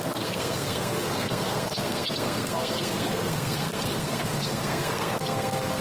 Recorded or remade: remade